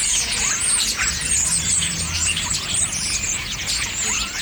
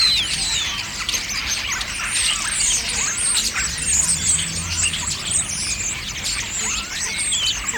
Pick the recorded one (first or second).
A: second